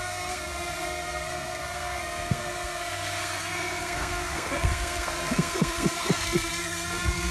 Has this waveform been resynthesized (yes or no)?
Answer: yes